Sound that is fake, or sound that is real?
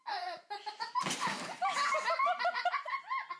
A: real